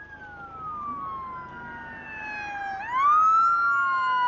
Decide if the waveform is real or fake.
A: real